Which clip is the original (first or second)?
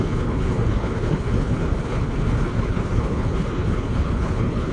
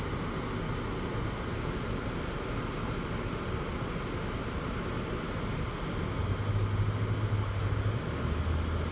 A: second